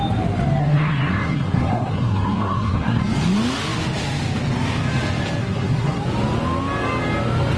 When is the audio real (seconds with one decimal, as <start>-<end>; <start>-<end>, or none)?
0.0-0.6; 3.0-5.4; 6.0-7.6